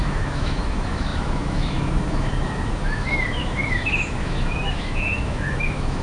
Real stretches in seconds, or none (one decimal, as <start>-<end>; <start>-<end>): none